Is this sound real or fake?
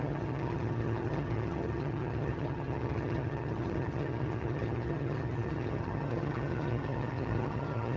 fake